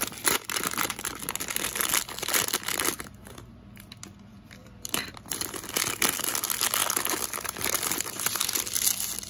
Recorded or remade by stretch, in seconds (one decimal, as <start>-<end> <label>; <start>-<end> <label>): 0.0-4.6 recorded; 4.6-5.7 remade; 5.7-6.8 recorded; 6.8-8.6 remade; 8.6-9.3 recorded

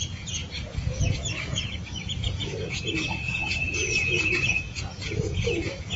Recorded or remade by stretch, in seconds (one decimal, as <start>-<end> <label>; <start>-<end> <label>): 0.0-6.0 remade

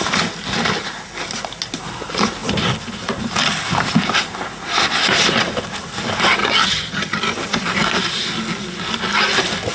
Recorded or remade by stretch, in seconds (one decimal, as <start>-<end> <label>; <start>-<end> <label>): 0.0-6.4 recorded; 6.4-7.2 remade; 7.2-9.7 recorded

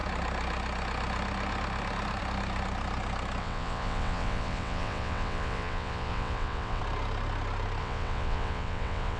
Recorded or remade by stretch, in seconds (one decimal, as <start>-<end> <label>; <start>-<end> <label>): 0.0-3.4 recorded; 3.4-6.8 remade; 6.8-7.8 recorded; 7.8-9.2 remade

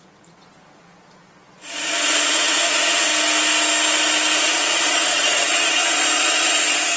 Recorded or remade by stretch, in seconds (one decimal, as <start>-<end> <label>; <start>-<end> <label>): 0.0-3.1 remade; 3.1-4.4 recorded; 4.4-7.0 remade